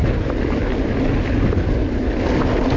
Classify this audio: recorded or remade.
recorded